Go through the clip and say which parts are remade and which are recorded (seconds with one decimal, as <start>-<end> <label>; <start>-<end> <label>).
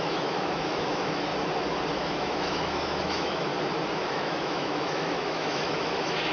0.0-1.3 remade; 1.3-2.0 recorded; 2.0-3.5 remade; 3.5-4.1 recorded; 4.1-6.3 remade